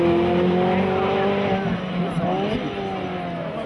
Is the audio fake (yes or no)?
no